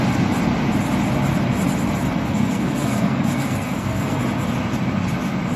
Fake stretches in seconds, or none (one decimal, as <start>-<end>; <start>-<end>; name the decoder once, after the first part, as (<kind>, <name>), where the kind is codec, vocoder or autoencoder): 2.2-4.2 (codec, SNAC)